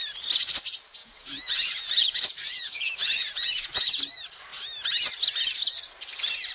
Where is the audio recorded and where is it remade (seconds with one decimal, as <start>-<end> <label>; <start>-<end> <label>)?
0.0-1.0 recorded; 1.0-4.0 remade; 4.0-6.5 recorded

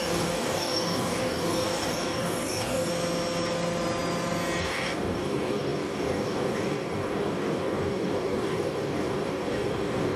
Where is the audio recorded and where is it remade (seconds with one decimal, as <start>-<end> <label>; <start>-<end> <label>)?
0.0-2.9 remade; 2.9-4.6 recorded; 4.6-10.2 remade

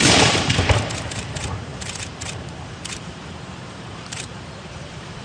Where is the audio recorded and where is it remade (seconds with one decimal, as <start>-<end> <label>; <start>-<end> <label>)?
0.0-5.2 remade

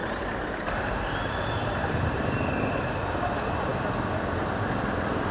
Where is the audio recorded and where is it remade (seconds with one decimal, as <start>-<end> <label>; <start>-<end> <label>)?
0.0-3.2 remade; 3.2-5.3 recorded